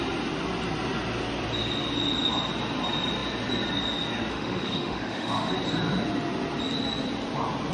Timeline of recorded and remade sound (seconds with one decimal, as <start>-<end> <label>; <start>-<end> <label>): 0.0-4.3 recorded; 4.3-5.5 remade; 5.5-7.7 recorded